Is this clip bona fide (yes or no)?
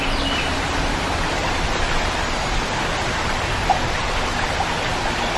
yes